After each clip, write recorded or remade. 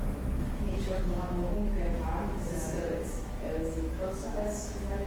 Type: remade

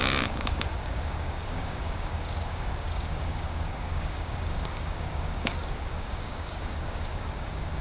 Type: remade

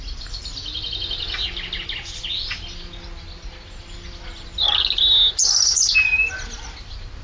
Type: recorded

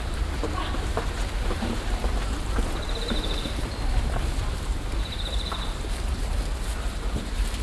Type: remade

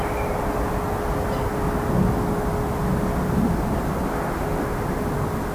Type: recorded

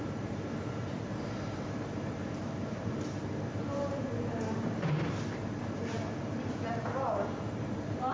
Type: remade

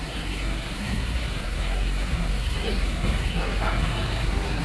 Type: remade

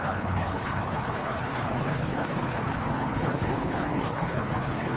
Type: remade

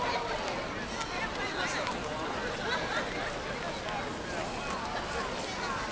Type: recorded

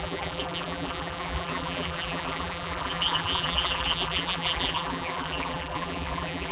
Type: remade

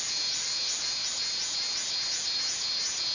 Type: recorded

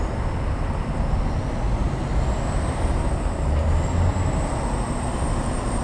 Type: recorded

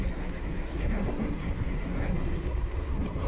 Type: remade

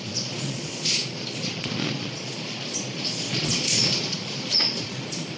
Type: remade